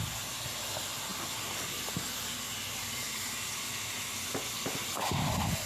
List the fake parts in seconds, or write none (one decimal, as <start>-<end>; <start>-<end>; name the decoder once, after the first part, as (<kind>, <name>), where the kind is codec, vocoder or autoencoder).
none